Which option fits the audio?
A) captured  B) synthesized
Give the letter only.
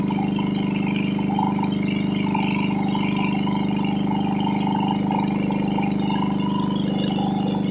A